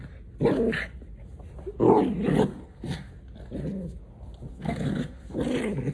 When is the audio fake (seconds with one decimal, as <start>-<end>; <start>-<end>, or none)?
2.5-3.1; 4.5-5.4